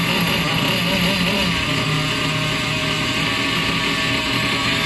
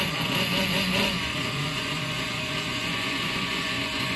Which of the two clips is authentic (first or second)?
first